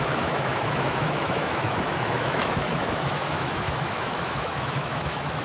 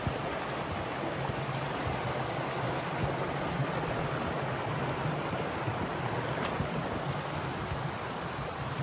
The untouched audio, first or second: second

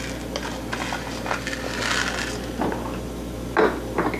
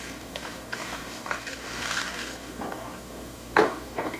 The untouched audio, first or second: first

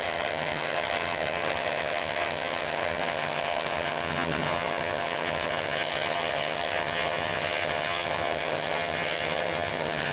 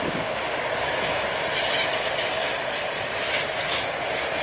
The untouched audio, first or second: second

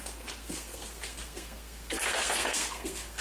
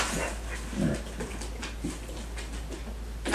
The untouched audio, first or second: second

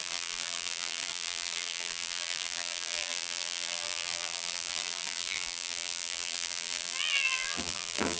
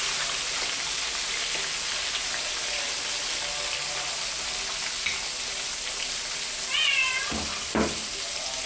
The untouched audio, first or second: second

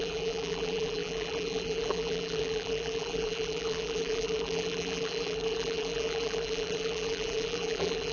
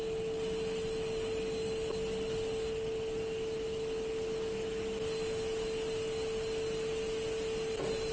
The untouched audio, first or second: second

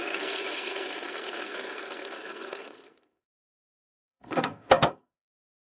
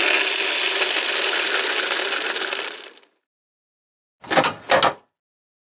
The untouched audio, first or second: second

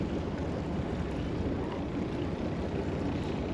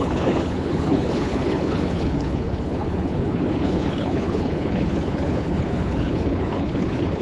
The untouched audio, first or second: first